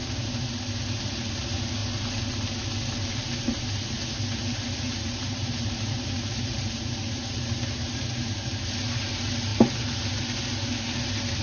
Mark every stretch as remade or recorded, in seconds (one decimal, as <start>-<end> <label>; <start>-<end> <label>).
0.0-4.4 recorded; 4.4-8.5 remade; 8.5-9.5 recorded; 9.5-10.2 remade; 10.2-11.4 recorded

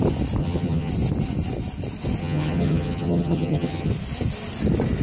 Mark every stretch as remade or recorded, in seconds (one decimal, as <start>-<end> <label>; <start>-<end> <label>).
0.0-0.4 recorded; 0.4-0.9 remade; 0.9-2.2 recorded; 2.2-3.9 remade; 3.9-5.0 recorded

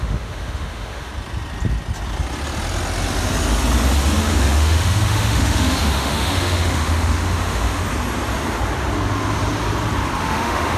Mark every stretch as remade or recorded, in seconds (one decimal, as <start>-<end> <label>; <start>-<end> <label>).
0.0-1.1 remade; 1.1-4.2 recorded; 4.2-7.8 remade; 7.8-10.2 recorded; 10.2-10.8 remade

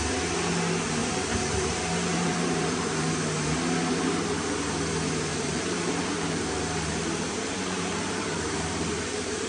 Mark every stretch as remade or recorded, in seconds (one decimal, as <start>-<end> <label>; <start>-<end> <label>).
0.0-1.0 recorded; 1.0-3.1 remade; 3.1-5.3 recorded; 5.3-9.5 remade

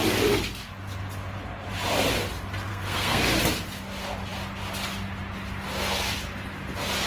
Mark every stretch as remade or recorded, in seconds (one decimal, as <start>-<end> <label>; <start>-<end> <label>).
0.0-2.7 recorded; 2.7-3.2 remade; 3.2-7.1 recorded

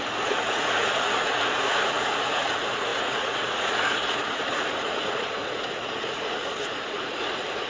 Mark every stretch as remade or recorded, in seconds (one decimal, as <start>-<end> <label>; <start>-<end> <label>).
0.0-7.7 remade

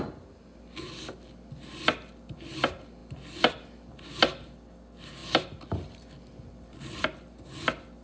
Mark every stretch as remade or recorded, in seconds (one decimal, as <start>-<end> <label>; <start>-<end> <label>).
0.0-8.0 recorded

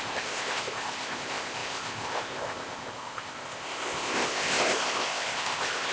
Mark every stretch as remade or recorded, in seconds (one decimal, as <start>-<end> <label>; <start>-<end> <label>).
0.0-5.9 remade